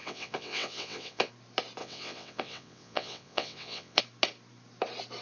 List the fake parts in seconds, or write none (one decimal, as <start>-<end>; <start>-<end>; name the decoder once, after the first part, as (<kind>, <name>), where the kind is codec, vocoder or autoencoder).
0.0-1.3 (vocoder, WaveNeXt); 1.8-4.0